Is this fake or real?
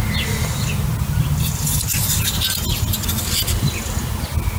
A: real